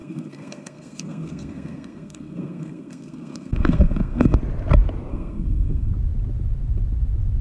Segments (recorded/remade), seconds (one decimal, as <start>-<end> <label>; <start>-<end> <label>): 0.0-4.4 remade; 4.4-5.1 recorded; 5.1-5.9 remade; 5.9-7.4 recorded